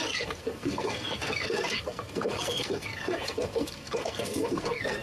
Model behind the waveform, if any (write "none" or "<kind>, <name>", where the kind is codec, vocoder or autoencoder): codec, SNAC